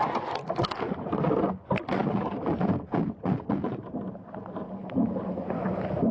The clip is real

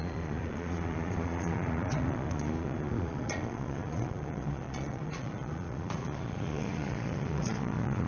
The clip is fake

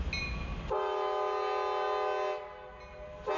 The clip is real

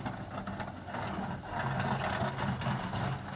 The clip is real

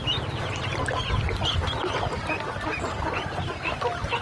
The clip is real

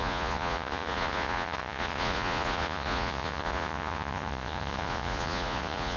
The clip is fake